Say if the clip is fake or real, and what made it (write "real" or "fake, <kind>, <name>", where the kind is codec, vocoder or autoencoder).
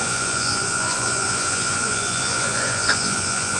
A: fake, vocoder, Vocos